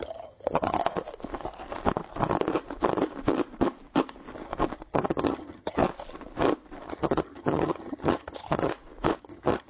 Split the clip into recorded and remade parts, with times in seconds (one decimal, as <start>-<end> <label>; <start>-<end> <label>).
0.0-0.8 remade; 0.8-4.9 recorded; 4.9-5.8 remade; 5.8-6.9 recorded; 6.9-8.7 remade; 8.7-9.2 recorded; 9.2-9.7 remade